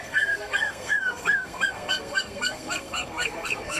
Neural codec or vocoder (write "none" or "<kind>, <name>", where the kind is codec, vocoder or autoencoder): codec, SNAC